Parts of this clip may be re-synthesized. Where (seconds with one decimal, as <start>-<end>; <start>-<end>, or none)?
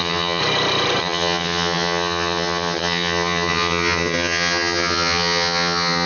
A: 0.0-0.4; 1.0-6.1